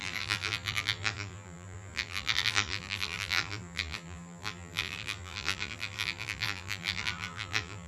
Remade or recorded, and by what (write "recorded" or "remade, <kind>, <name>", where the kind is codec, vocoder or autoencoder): remade, vocoder, BigVGAN v2